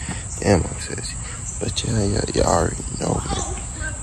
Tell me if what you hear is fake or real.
fake